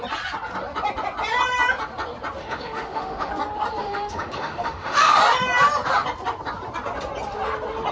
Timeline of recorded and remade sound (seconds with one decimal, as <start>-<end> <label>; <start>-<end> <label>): 0.0-2.4 recorded; 2.4-3.3 remade; 3.3-3.8 recorded; 3.8-5.2 remade; 5.2-7.9 recorded